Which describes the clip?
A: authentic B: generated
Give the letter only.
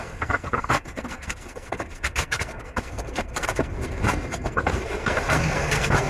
B